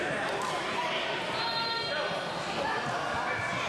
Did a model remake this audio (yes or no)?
no